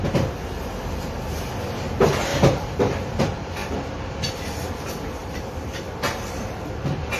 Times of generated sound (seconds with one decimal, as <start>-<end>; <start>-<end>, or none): 2.3-3.2; 3.6-4.2; 5.2-5.9